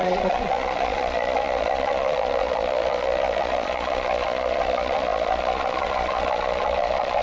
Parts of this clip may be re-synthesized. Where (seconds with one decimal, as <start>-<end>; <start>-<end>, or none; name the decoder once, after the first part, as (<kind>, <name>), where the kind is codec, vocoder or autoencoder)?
0.0-7.2 (vocoder, Vocos)